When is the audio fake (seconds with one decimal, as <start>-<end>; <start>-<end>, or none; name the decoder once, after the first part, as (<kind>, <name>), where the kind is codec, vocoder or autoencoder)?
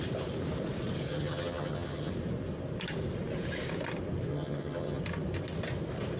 1.1-2.1 (vocoder, HiFi-GAN); 4.3-5.0